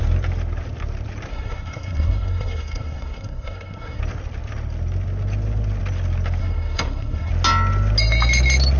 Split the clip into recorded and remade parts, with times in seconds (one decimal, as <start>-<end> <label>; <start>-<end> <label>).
0.0-1.3 recorded; 1.3-4.0 remade; 4.0-6.4 recorded; 6.4-7.3 remade; 7.3-8.8 recorded